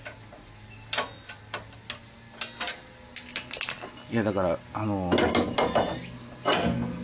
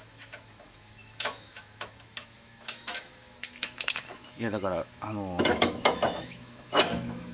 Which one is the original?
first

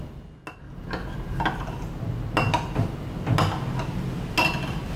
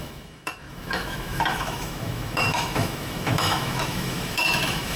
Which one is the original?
first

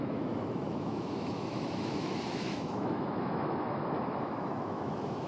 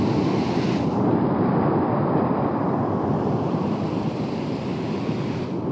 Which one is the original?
second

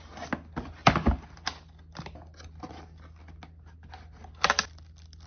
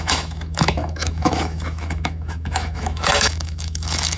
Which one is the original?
first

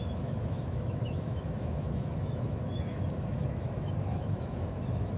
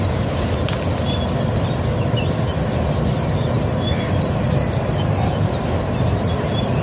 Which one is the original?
second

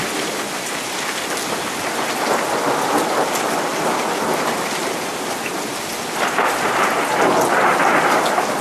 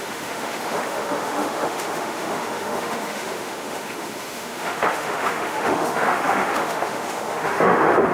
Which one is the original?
first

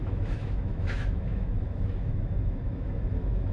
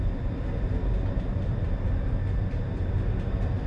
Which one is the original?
second